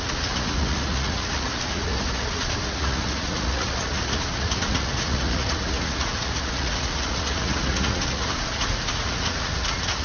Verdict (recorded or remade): remade